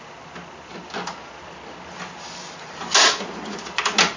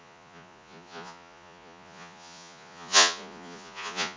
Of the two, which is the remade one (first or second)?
second